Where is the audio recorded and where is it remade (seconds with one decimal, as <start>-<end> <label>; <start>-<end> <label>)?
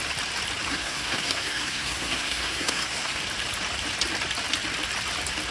0.0-0.7 recorded; 0.7-3.2 remade; 3.2-5.5 recorded